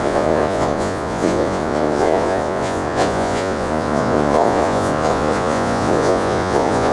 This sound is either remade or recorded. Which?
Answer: remade